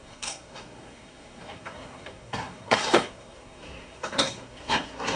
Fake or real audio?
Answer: fake